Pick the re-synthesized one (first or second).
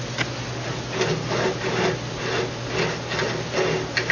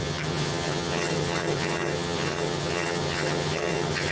second